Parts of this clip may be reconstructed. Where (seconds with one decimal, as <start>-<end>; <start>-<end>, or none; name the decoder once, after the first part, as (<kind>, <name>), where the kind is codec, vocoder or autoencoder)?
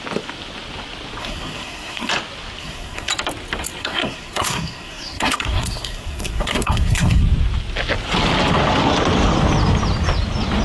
1.2-2.1 (codec, SNAC); 2.6-3.1; 3.8-7.2